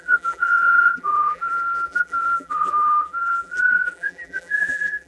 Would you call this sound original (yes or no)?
no